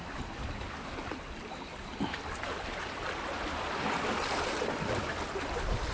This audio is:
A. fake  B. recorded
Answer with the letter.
A